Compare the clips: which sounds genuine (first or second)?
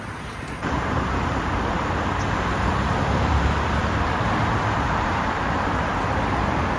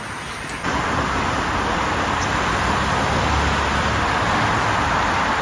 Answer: second